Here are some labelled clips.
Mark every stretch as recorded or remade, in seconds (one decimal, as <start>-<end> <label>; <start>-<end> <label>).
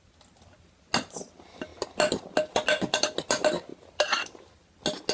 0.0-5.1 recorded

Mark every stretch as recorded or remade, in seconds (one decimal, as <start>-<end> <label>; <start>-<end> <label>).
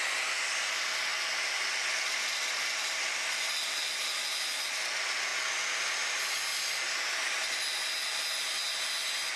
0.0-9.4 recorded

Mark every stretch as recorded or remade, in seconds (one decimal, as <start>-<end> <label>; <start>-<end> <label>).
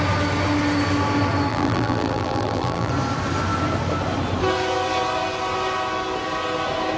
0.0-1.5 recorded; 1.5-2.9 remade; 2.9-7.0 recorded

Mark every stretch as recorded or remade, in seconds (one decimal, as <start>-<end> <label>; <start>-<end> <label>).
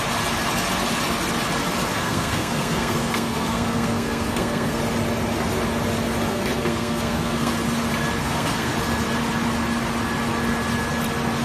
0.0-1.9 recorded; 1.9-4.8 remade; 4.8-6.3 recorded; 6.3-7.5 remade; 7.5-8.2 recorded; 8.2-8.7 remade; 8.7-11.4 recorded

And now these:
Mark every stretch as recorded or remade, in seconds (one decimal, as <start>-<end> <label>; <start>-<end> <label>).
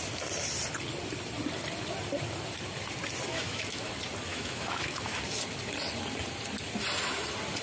0.0-3.3 recorded; 3.3-3.9 remade; 3.9-4.3 recorded; 4.3-5.2 remade; 5.2-7.6 recorded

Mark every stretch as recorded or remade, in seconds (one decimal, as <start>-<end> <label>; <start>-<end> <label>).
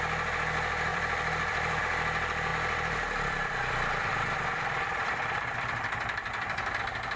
0.0-0.9 recorded; 0.9-1.8 remade; 1.8-2.5 recorded; 2.5-6.8 remade; 6.8-7.2 recorded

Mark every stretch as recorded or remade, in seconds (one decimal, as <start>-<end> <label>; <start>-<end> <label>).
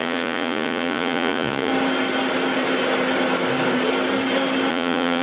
0.0-1.7 remade; 1.7-4.7 recorded; 4.7-5.2 remade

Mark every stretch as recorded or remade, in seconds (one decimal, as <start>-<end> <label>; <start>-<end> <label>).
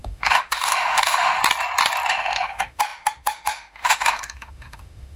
0.0-1.4 remade; 1.4-2.1 recorded; 2.1-5.2 remade